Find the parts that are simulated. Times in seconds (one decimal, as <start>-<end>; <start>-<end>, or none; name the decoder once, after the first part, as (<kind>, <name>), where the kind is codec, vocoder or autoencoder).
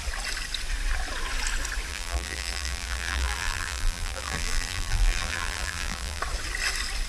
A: 1.9-6.2 (vocoder, BigVGAN v2)